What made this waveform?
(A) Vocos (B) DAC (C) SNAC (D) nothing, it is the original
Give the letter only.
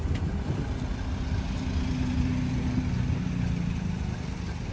D